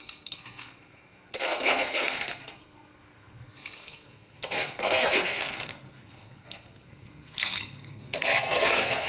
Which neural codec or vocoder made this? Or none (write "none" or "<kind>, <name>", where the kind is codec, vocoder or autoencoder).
codec, SNAC